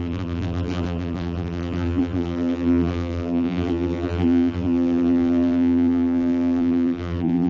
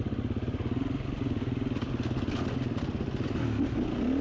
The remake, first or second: first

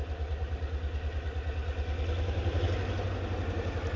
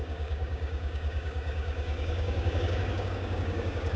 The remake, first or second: second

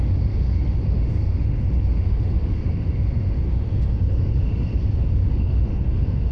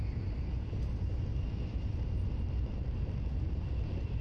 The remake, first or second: first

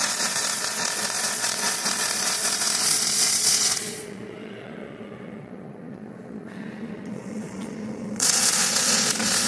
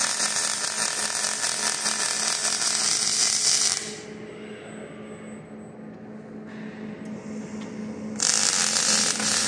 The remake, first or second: first